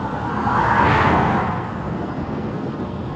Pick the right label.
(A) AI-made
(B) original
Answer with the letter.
A